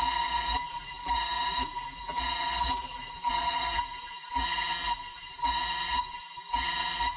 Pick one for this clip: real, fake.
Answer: fake